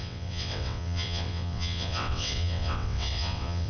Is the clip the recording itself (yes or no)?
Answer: no